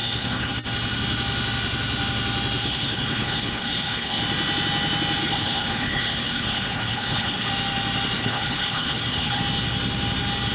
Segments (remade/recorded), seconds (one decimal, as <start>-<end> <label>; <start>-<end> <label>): 0.0-0.5 remade; 0.5-2.6 recorded; 2.6-4.2 remade; 4.2-5.2 recorded; 5.2-7.5 remade; 7.5-8.2 recorded; 8.2-9.4 remade; 9.4-10.5 recorded